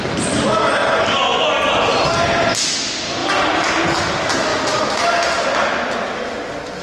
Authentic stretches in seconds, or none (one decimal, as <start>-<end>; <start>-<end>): 0.0-6.8